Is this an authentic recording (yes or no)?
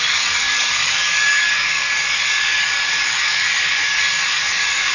no